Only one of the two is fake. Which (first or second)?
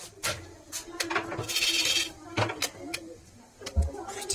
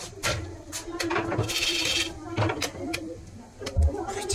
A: second